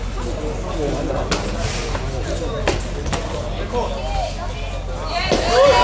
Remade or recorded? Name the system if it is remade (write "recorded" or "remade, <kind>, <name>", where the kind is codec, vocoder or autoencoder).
recorded